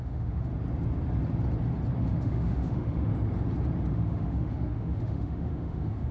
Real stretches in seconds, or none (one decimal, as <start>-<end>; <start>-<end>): 0.5-2.0; 3.1-3.9